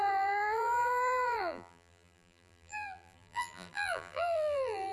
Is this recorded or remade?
remade